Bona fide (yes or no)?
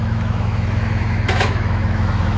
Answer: no